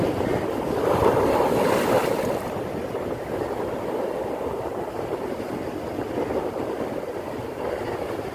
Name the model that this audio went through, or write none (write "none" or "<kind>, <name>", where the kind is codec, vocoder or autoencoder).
none